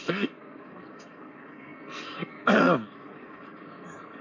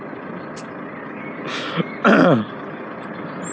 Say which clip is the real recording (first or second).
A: second